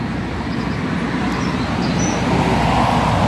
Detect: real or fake real